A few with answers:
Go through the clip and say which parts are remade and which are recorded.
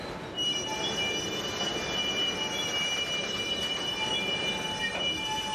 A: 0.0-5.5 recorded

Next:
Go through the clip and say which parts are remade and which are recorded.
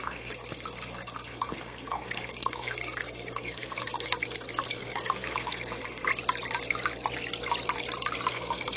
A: 0.0-6.1 remade; 6.1-8.3 recorded; 8.3-8.8 remade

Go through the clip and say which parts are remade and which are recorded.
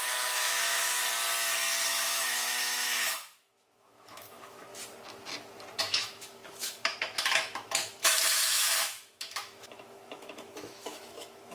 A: 0.0-1.0 remade; 1.0-1.9 recorded; 1.9-4.7 remade; 4.7-5.8 recorded; 5.8-11.5 remade